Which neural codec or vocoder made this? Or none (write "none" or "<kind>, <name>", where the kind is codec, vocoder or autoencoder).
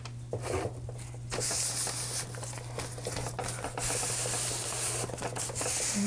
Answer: none